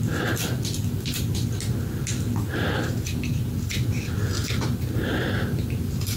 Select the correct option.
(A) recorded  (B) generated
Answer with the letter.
A